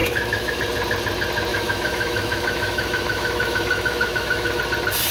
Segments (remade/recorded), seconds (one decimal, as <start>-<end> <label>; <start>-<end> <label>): 0.0-0.6 remade; 0.6-1.5 recorded; 1.5-4.6 remade; 4.6-5.1 recorded